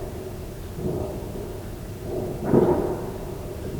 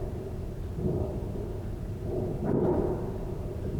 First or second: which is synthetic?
second